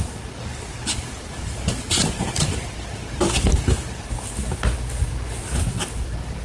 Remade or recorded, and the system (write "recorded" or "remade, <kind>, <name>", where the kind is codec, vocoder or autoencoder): recorded